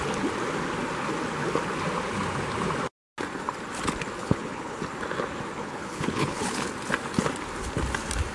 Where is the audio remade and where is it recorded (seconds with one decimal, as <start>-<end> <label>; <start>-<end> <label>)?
0.0-4.2 recorded; 4.2-4.8 remade; 4.8-5.6 recorded; 5.6-6.7 remade; 6.7-8.3 recorded